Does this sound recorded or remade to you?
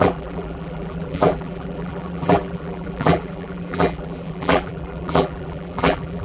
remade